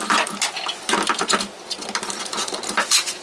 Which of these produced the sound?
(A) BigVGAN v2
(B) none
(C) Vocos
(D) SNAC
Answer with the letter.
B